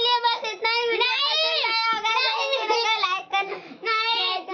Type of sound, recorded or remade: remade